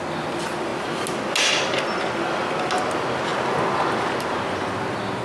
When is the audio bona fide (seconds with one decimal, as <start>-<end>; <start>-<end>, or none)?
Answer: 0.0-5.2